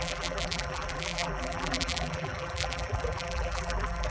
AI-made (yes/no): yes